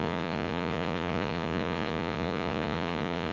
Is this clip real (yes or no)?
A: no